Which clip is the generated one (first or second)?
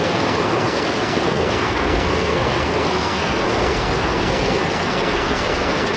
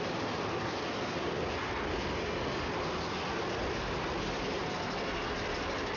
first